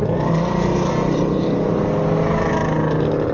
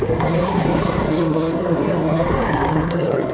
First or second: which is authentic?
first